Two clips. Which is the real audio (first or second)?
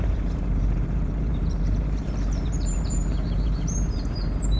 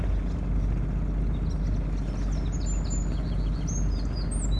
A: second